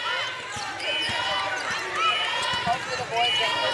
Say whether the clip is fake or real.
real